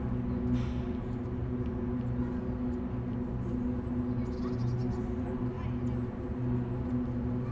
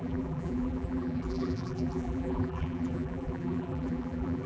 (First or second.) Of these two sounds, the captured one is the first